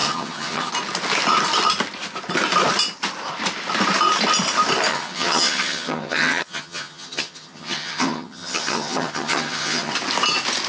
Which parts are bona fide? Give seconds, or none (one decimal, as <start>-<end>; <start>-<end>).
0.7-4.9; 9.9-10.7